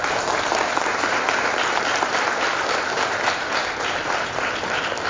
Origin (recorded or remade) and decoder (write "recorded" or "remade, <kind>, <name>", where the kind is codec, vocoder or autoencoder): remade, vocoder, BigVGAN v2